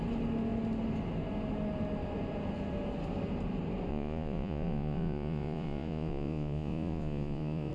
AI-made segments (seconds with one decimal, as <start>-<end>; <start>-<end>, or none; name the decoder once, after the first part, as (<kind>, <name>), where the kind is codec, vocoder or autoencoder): 3.9-7.7 (vocoder, Vocos)